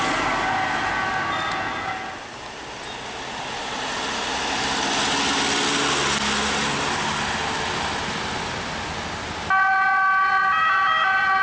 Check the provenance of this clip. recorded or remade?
recorded